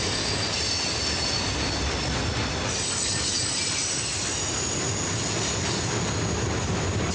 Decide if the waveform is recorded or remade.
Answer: recorded